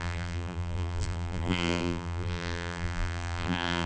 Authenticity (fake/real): fake